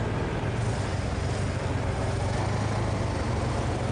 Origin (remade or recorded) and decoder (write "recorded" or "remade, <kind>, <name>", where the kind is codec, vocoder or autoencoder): recorded